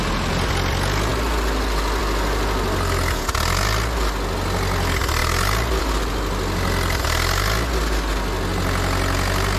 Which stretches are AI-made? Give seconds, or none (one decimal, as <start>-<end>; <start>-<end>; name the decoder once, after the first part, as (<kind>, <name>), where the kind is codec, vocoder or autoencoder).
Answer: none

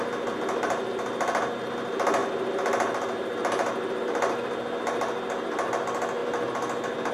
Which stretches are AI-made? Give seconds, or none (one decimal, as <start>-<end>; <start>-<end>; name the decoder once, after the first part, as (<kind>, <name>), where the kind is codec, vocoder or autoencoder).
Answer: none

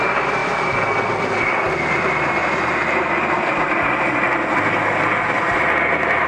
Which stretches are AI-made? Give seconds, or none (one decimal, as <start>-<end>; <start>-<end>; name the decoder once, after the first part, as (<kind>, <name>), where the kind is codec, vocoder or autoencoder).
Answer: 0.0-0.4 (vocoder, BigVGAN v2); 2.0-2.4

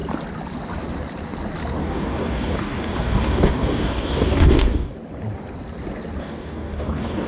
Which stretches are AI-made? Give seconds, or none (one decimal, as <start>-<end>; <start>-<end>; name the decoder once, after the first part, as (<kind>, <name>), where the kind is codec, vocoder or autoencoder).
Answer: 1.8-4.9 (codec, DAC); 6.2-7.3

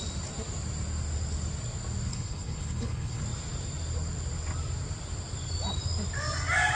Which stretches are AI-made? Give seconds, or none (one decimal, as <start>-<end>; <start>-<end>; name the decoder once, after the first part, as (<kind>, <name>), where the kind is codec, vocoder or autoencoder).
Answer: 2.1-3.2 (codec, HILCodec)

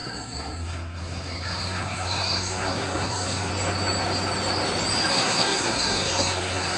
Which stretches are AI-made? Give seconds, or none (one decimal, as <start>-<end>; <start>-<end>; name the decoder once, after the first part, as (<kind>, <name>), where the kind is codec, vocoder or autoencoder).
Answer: 0.0-3.5 (codec, SNAC); 5.1-6.8

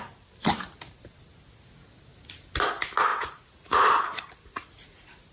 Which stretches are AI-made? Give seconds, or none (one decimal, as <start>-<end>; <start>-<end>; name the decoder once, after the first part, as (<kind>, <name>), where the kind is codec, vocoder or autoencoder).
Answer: 3.1-5.3 (vocoder, Vocos)

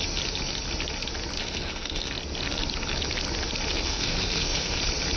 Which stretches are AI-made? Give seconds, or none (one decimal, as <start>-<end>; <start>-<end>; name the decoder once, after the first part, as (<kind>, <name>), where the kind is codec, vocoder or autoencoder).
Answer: 1.4-2.1 (codec, SNAC); 3.7-4.8